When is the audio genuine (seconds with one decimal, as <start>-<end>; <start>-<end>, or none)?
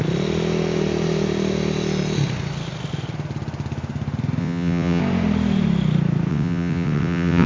0.0-4.4; 5.0-6.3